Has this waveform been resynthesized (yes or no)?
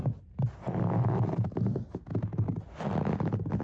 no